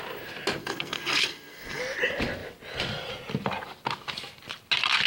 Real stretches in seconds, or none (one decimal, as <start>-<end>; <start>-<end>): 0.0-0.6; 1.8-5.1